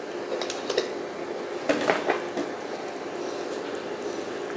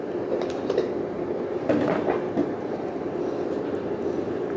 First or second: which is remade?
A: second